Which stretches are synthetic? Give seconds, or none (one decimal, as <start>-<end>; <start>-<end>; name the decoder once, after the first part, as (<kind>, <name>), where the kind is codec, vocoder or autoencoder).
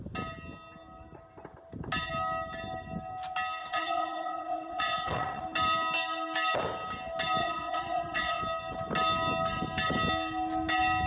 3.6-5.4 (vocoder, WaveNeXt); 7.4-8.4